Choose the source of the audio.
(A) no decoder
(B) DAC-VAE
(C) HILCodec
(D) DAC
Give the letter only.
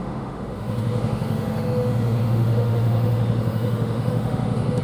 B